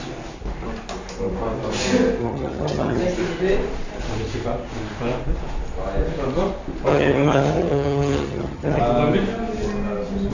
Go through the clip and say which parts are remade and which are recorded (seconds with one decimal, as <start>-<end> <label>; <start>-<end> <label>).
0.0-2.2 recorded; 2.2-3.0 remade; 3.0-6.9 recorded; 6.9-8.8 remade; 8.8-10.3 recorded